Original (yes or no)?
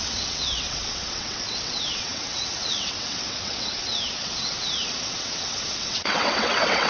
no